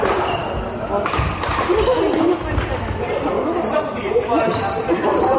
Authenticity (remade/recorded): recorded